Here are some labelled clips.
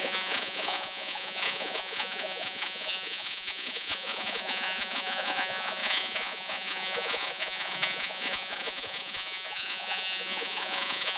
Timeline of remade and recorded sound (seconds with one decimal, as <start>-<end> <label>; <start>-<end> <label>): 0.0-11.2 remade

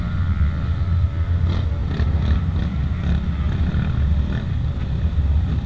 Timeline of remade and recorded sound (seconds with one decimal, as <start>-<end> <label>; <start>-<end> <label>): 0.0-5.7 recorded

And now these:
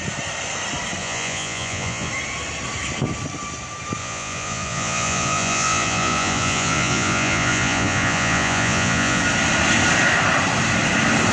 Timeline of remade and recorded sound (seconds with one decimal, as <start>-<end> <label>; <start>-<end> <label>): 0.0-1.0 recorded; 1.0-2.1 remade; 2.1-4.0 recorded; 4.0-9.2 remade; 9.2-11.3 recorded

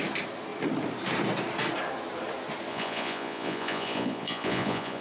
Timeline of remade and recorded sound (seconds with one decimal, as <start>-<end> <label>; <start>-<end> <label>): 0.0-2.7 recorded; 2.7-5.0 remade

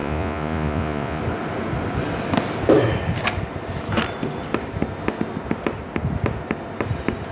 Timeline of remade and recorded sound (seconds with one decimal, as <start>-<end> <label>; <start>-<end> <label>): 0.0-1.2 remade; 1.2-7.3 recorded

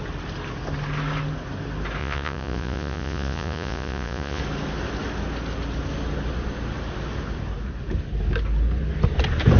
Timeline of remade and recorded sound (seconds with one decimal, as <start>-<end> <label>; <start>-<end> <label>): 0.0-2.0 recorded; 2.0-4.4 remade; 4.4-9.6 recorded